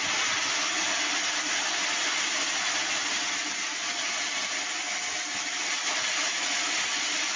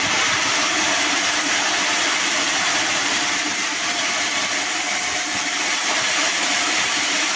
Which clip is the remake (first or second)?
second